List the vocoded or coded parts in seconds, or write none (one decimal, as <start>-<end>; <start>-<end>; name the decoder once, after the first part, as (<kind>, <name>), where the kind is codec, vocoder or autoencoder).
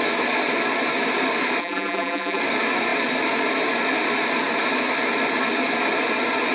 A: 1.6-2.4 (vocoder, BigVGAN v2)